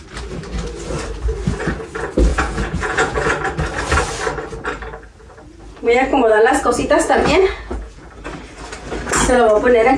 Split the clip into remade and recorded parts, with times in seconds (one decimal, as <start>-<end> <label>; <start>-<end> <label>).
0.0-2.3 recorded; 2.3-3.3 remade; 3.3-6.1 recorded; 6.1-8.1 remade; 8.1-10.0 recorded